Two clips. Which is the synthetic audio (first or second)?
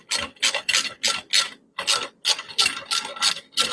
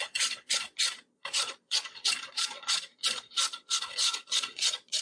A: second